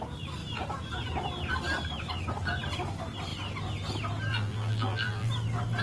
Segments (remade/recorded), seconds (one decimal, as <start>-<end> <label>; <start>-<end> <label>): 0.0-4.3 recorded; 4.3-5.3 remade; 5.3-5.8 recorded